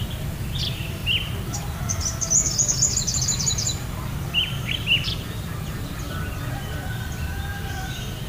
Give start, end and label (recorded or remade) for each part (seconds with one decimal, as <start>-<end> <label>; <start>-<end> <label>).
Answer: 0.0-1.0 remade; 1.0-3.2 recorded; 3.2-7.3 remade; 7.3-8.3 recorded